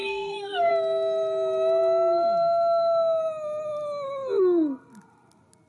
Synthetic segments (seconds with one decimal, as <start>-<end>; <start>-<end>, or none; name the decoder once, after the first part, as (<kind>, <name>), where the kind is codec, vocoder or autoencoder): 0.0-0.7 (codec, SNAC)